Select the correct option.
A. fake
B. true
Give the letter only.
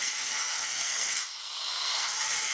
A